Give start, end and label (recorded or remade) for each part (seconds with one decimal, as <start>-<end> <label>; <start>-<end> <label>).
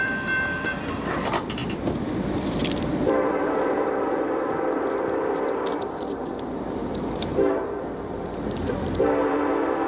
0.0-9.9 remade